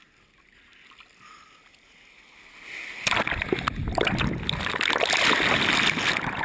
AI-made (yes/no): no